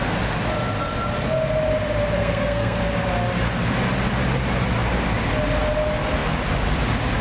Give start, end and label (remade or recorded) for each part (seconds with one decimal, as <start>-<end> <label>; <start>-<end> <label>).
0.0-2.2 recorded; 2.2-2.8 remade; 2.8-7.2 recorded